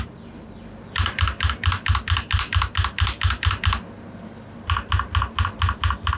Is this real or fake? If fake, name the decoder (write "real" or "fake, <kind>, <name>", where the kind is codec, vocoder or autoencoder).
real